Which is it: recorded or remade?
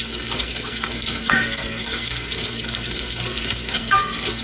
remade